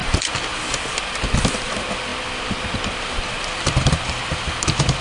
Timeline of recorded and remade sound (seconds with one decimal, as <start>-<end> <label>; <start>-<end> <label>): 0.0-5.0 recorded